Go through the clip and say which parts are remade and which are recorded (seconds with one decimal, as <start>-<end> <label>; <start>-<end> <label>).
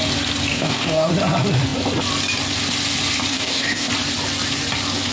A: 0.0-0.5 recorded; 0.5-1.1 remade; 1.1-3.3 recorded; 3.3-3.9 remade; 3.9-5.1 recorded